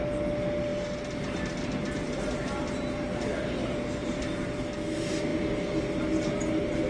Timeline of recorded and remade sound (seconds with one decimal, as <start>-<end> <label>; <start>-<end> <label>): 0.0-4.0 recorded; 4.0-4.6 remade; 4.6-6.9 recorded